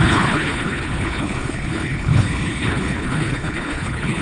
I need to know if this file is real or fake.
fake